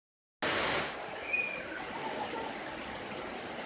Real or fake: real